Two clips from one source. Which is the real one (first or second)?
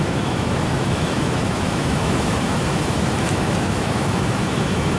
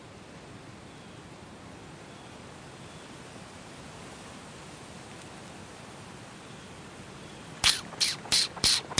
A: second